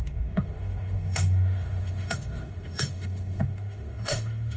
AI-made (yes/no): yes